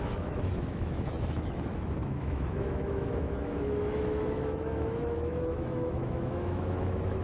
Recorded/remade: remade